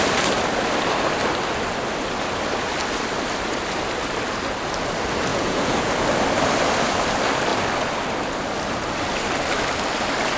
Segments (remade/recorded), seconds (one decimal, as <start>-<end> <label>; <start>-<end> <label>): 0.0-5.3 recorded; 5.3-5.9 remade; 5.9-10.4 recorded